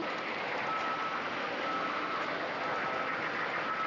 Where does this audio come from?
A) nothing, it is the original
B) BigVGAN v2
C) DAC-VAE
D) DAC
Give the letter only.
A